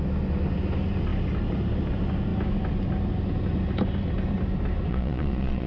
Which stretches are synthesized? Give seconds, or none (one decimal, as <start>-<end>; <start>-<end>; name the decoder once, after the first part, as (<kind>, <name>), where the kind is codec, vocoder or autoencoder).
4.9-5.7 (vocoder, Vocos)